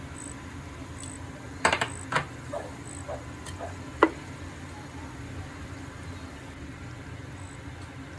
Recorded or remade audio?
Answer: recorded